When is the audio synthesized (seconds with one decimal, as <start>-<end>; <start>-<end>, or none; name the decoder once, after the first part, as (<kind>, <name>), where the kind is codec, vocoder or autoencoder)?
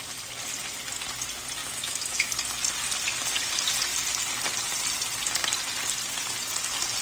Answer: 1.6-2.3 (autoencoder, DAC-VAE)